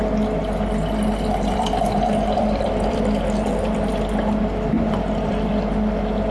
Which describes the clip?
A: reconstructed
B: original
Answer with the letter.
A